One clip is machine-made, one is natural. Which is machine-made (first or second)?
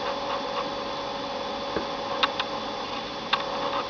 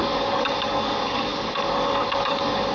second